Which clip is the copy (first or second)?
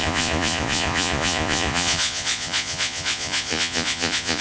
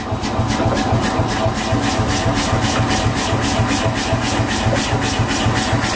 first